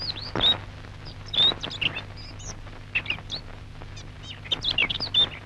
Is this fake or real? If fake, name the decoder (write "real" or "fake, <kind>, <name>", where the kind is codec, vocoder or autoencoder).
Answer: real